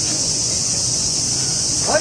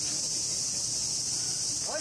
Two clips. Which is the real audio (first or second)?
second